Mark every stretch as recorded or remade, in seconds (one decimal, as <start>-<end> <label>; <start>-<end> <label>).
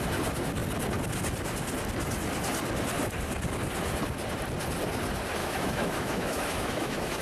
0.0-5.4 recorded; 5.4-7.2 remade